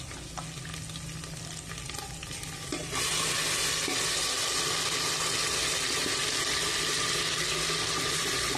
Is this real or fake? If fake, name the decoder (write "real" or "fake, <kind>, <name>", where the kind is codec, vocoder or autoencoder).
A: real